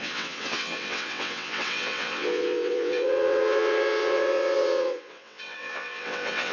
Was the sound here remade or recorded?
remade